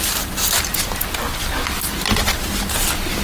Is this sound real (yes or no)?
yes